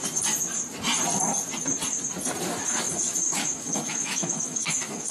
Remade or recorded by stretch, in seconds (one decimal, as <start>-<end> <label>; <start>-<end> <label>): 0.0-2.5 recorded; 2.5-5.1 remade